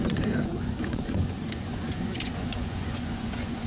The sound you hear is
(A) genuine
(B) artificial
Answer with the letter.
B